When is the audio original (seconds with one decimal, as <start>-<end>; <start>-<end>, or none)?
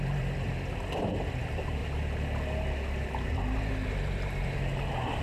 1.8-3.3